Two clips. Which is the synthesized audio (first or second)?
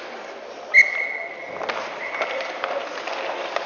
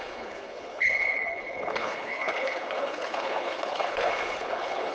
second